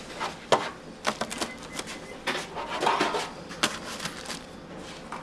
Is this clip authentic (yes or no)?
yes